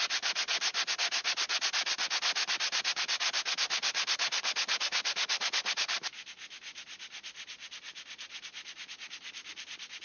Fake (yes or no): no